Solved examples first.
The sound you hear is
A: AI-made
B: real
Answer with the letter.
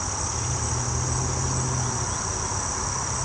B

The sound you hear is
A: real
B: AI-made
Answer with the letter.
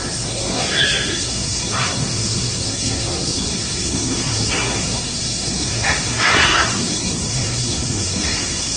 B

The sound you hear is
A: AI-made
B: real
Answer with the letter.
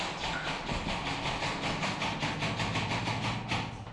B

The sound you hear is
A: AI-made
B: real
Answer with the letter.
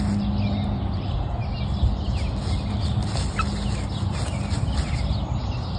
B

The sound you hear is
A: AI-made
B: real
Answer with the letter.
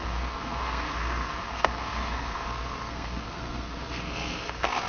A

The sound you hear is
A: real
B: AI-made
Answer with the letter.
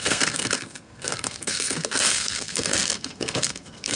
B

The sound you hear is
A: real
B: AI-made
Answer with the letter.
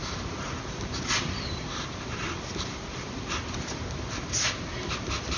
A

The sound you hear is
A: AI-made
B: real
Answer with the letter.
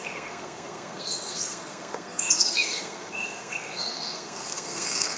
A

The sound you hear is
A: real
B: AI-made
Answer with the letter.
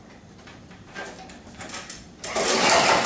A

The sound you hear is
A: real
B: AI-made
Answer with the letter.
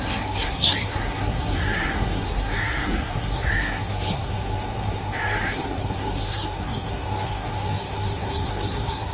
B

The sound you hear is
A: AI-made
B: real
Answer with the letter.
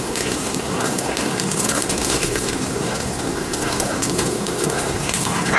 A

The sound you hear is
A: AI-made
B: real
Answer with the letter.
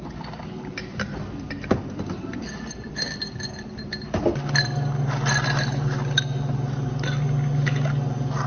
B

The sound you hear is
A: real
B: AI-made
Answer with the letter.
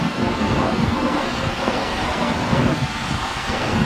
B